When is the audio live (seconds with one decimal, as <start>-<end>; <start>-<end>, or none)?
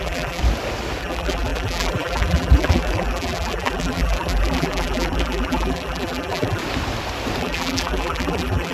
0.4-1.0; 6.6-7.4